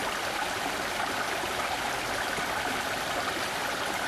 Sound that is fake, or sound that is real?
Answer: real